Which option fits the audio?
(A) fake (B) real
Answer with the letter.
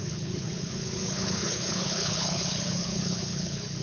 A